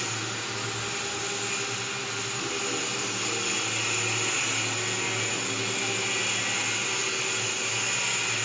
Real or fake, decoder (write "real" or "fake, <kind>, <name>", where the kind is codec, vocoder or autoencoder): real